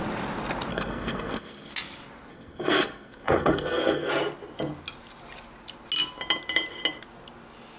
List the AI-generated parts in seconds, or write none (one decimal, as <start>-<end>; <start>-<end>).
0.7-1.7; 2.3-4.1